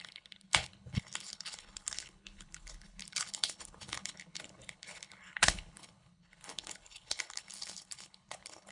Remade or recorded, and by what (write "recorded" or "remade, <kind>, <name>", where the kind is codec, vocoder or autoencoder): remade, codec, HILCodec